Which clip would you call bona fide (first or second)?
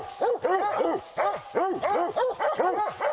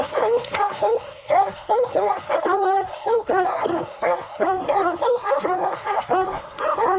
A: first